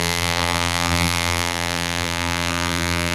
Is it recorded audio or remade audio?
remade